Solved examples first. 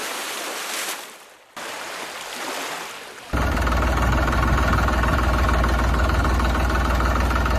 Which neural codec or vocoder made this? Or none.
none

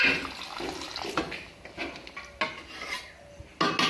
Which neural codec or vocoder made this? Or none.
none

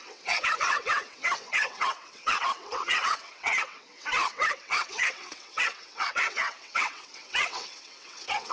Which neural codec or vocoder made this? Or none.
vocoder, WaveNeXt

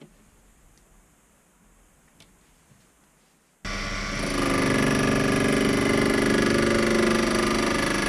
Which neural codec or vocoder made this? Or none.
none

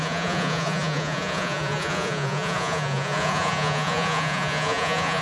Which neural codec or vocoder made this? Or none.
vocoder, Vocos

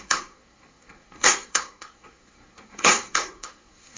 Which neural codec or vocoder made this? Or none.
codec, SNAC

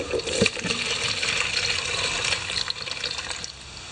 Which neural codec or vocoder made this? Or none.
none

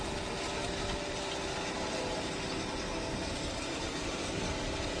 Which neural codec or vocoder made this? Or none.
none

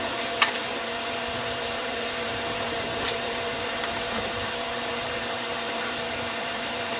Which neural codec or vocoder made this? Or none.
vocoder, BigVGAN v2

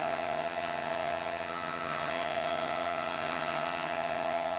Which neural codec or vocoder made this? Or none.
vocoder, HiFi-GAN